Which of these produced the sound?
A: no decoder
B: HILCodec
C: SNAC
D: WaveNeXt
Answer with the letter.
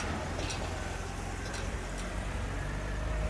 A